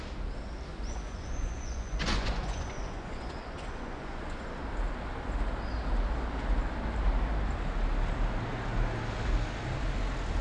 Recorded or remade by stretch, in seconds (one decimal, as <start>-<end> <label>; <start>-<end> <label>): 0.0-0.7 recorded; 0.7-4.6 remade; 4.6-10.4 recorded